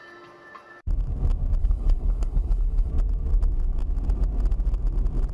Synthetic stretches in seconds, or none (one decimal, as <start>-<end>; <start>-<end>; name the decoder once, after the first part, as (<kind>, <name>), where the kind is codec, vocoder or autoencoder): 1.6-2.9 (codec, HILCodec)